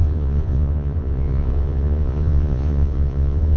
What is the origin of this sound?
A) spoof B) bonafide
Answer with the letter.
A